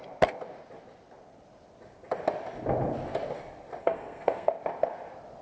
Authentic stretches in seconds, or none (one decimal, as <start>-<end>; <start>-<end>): 0.0-3.8; 4.5-5.4